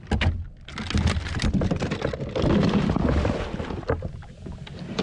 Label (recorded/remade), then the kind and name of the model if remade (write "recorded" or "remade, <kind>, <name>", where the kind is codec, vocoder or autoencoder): recorded